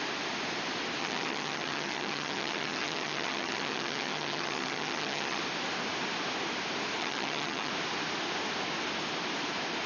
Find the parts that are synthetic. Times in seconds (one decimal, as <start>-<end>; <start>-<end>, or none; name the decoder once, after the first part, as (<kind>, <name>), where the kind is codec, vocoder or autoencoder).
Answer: 1.0-5.4 (vocoder, HiFi-GAN); 7.0-7.7